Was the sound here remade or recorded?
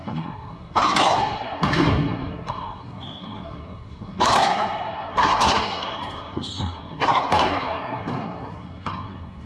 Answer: remade